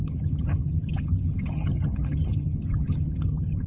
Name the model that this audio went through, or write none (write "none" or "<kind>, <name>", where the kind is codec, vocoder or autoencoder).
vocoder, HiFi-GAN